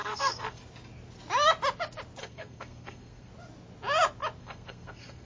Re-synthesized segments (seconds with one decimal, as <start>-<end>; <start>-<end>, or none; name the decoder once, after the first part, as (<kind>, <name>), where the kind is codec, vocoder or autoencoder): 0.0-0.6 (codec, SNAC); 2.2-3.3; 4.4-5.3